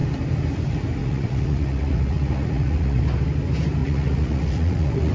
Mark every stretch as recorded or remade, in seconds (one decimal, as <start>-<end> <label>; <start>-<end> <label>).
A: 0.0-1.0 recorded; 1.0-3.0 remade; 3.0-3.8 recorded; 3.8-5.1 remade